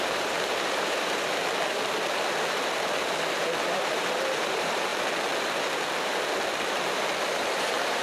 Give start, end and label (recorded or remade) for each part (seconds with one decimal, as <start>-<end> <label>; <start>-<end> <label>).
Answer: 0.0-1.4 remade; 1.4-3.4 recorded; 3.4-4.9 remade; 4.9-7.2 recorded; 7.2-8.0 remade